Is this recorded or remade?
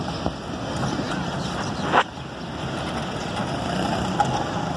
recorded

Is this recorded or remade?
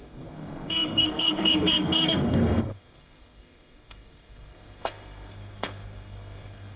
remade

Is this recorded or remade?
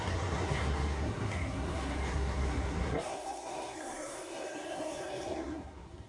remade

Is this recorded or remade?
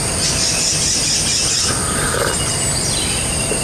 recorded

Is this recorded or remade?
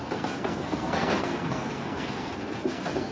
remade